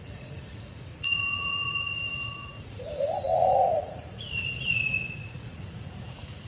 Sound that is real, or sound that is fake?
fake